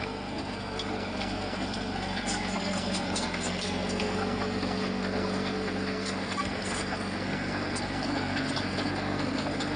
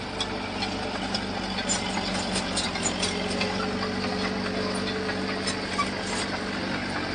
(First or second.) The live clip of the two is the second